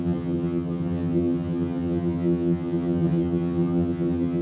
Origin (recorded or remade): remade